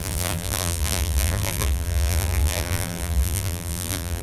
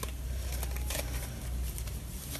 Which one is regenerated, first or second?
first